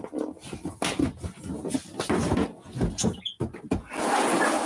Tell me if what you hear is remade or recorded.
recorded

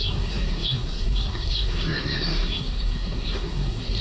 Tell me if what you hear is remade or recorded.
remade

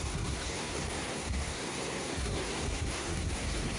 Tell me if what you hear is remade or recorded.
remade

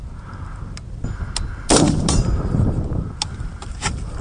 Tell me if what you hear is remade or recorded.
recorded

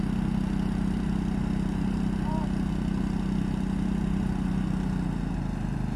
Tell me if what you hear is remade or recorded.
recorded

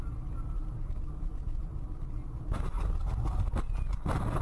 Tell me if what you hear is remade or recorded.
recorded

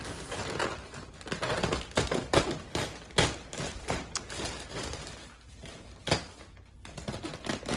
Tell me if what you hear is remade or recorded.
recorded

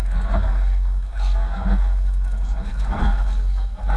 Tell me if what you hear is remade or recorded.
remade